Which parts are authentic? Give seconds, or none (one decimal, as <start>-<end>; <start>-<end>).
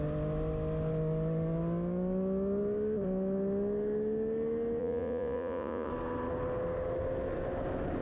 0.0-4.8; 5.9-8.0